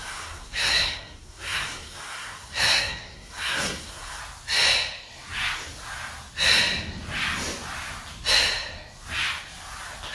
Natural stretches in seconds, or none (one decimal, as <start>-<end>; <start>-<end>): 4.2-10.1